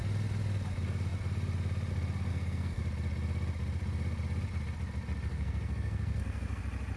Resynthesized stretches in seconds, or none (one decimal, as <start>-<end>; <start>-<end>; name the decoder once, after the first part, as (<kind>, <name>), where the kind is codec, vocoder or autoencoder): 2.3-2.8 (codec, SNAC); 5.3-6.6

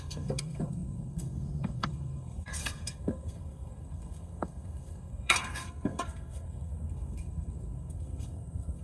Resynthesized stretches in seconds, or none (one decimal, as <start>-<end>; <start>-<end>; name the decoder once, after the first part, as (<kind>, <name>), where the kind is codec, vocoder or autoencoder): 0.0-8.8 (codec, SNAC)

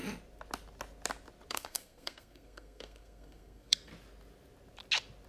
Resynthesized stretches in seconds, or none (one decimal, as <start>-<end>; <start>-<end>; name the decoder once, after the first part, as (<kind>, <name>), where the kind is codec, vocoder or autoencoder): 1.5-3.9 (codec, SNAC)

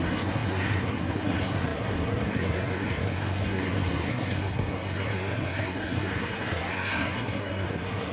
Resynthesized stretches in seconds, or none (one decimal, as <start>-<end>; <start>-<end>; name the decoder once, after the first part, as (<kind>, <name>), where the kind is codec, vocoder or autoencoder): 0.0-8.1 (codec, SNAC)

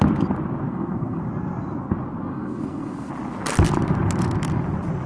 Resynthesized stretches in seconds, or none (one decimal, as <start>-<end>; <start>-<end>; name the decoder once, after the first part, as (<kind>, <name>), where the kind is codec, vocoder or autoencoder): 0.7-1.2 (codec, SNAC); 2.3-3.1

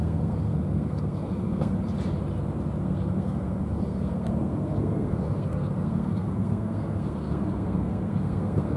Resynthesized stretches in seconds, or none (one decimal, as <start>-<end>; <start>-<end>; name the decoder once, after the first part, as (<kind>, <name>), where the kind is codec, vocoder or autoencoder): 0.0-1.7 (codec, SNAC); 2.8-8.8